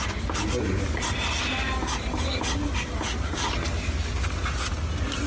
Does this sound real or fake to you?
real